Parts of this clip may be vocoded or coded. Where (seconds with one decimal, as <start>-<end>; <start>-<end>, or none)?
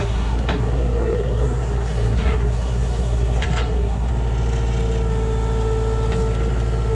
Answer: 0.0-4.1